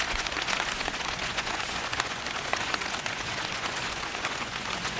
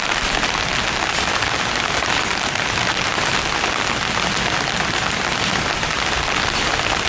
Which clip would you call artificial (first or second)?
first